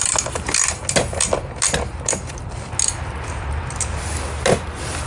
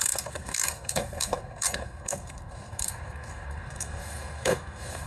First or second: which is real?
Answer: first